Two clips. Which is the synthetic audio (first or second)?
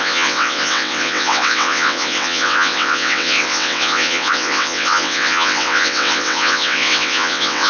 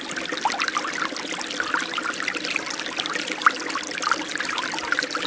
first